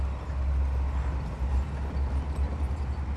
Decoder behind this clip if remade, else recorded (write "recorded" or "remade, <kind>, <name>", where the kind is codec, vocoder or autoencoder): recorded